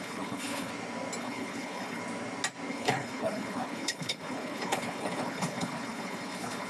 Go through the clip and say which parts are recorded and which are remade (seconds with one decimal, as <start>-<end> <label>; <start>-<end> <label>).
0.0-0.7 remade; 0.7-1.2 recorded; 1.2-2.0 remade; 2.0-2.7 recorded; 2.7-6.7 remade